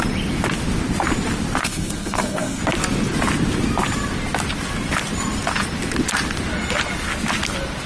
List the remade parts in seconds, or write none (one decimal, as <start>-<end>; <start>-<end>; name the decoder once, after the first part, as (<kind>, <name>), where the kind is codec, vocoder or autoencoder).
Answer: 1.6-2.6 (codec, SNAC)